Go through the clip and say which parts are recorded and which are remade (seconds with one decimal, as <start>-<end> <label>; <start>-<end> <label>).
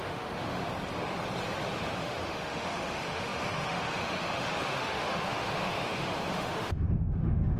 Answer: 0.0-0.6 remade; 0.6-2.0 recorded; 2.0-7.6 remade